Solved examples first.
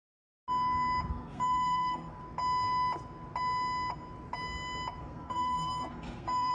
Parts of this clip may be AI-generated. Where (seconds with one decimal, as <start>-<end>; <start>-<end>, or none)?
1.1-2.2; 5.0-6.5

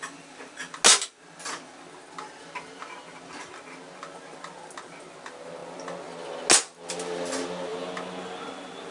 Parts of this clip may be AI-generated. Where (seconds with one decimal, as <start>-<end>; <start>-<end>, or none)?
none

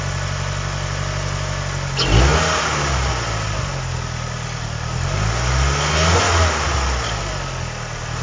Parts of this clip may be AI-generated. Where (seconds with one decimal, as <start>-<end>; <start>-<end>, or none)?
none

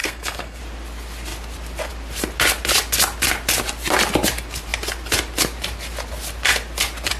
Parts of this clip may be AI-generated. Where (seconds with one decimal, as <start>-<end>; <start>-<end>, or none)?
0.0-0.6

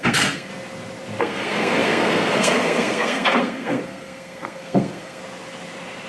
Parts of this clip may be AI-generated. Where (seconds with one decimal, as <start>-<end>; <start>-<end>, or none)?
0.0-0.5; 1.2-5.2